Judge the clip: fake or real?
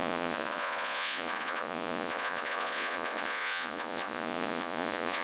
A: fake